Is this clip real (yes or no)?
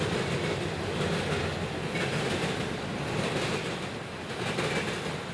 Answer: yes